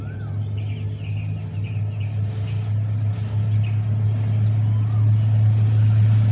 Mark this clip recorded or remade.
recorded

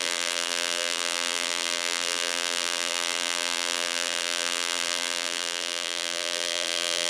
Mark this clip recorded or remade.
remade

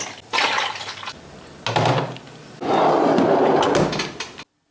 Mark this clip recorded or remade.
recorded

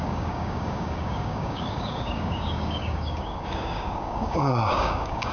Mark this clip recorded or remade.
remade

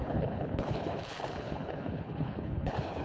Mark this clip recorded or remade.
remade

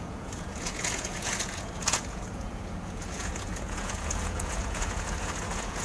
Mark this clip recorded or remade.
remade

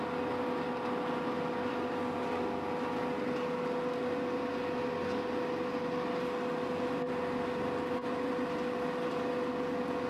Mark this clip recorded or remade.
recorded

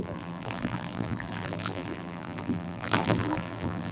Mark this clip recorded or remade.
remade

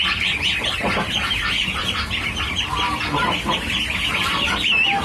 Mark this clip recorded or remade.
recorded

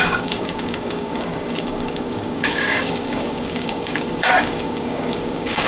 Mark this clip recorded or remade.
remade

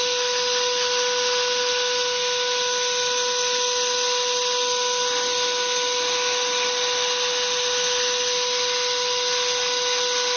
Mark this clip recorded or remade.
recorded